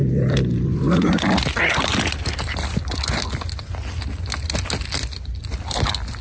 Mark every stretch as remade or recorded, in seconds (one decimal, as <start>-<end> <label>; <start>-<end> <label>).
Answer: 0.0-1.3 remade; 1.3-1.9 recorded; 1.9-2.7 remade; 2.7-6.2 recorded